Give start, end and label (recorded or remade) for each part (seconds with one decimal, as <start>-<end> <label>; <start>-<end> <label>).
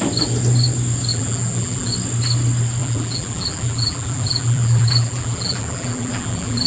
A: 0.0-1.1 recorded; 1.1-1.9 remade; 1.9-2.8 recorded; 2.8-6.7 remade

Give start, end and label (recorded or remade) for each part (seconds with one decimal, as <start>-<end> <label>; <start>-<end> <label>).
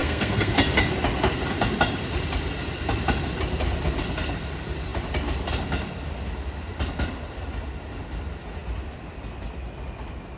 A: 0.0-0.5 remade; 0.5-10.4 recorded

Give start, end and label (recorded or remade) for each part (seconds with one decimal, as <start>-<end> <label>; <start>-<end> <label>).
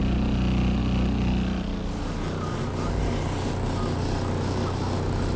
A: 0.0-5.4 recorded